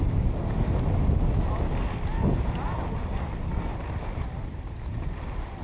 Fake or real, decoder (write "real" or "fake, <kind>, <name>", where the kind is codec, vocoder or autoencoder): real